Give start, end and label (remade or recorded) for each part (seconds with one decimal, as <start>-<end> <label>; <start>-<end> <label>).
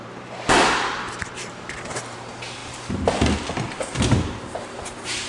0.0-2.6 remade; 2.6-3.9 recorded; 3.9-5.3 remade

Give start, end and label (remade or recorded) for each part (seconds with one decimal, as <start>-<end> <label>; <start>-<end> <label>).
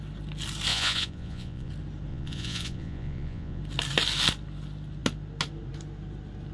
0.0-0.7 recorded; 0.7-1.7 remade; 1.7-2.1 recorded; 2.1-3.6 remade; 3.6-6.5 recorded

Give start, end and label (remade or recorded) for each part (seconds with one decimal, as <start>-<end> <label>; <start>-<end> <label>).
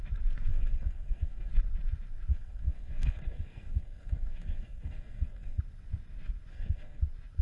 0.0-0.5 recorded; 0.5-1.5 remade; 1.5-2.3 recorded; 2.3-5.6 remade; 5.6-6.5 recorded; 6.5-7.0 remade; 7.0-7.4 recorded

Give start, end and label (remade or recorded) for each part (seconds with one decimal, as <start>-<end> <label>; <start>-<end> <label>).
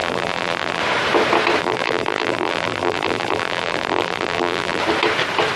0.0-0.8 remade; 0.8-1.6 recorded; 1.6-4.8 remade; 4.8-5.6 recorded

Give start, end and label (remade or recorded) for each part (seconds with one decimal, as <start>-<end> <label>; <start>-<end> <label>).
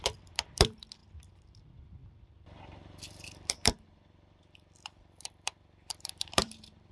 0.0-6.9 remade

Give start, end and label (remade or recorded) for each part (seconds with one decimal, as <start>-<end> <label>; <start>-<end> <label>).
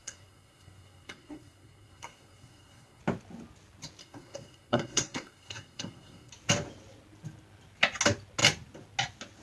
0.0-3.0 remade; 3.0-4.0 recorded; 4.0-6.3 remade; 6.3-9.4 recorded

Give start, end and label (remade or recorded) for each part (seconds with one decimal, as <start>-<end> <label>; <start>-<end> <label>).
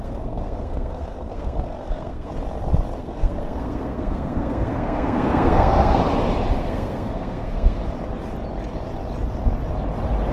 0.0-2.3 remade; 2.3-3.0 recorded; 3.0-6.0 remade; 6.0-6.6 recorded; 6.6-7.8 remade; 7.8-10.3 recorded